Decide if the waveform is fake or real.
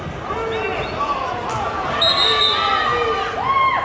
real